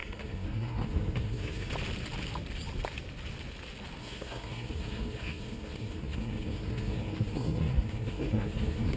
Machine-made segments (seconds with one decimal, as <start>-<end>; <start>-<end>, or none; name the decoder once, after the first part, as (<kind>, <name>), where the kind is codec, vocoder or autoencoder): 0.0-1.7 (codec, SNAC); 4.0-9.0